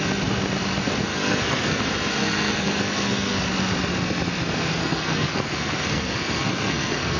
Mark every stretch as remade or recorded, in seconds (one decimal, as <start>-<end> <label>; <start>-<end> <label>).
0.0-1.1 recorded; 1.1-1.8 remade; 1.8-2.2 recorded; 2.2-3.5 remade; 3.5-4.8 recorded; 4.8-7.2 remade